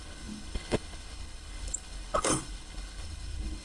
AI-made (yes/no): yes